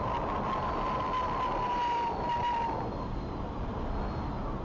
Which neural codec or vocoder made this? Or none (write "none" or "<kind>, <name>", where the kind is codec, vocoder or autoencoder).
none